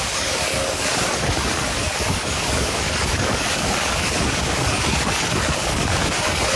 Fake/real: fake